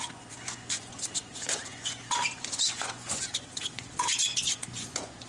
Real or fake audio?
fake